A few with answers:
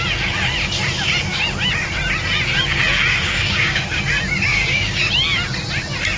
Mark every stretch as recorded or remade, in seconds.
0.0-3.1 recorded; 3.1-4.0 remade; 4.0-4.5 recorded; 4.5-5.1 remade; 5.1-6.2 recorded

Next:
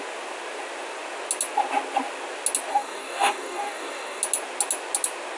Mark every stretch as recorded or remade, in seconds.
0.0-2.7 recorded; 2.7-4.2 remade; 4.2-5.4 recorded

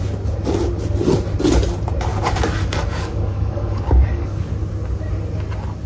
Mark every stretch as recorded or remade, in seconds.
0.0-2.1 recorded; 2.1-4.5 remade; 4.5-5.9 recorded

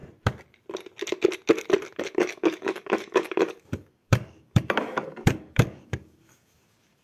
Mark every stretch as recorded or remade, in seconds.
0.0-2.0 recorded; 2.0-7.0 remade

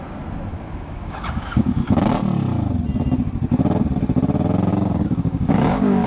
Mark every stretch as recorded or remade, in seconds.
0.0-0.5 recorded; 0.5-2.1 remade; 2.1-4.7 recorded; 4.7-6.1 remade

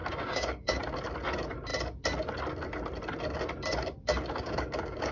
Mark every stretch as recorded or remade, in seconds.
0.0-0.8 remade; 0.8-4.3 recorded; 4.3-5.1 remade

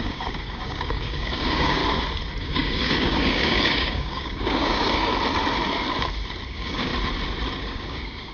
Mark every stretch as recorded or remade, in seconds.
0.0-1.8 remade; 1.8-2.4 recorded; 2.4-5.1 remade; 5.1-6.5 recorded; 6.5-6.9 remade; 6.9-7.6 recorded; 7.6-8.3 remade